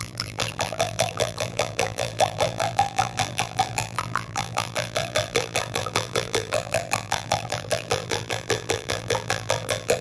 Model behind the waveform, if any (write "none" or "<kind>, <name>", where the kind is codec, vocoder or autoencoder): vocoder, BigVGAN v2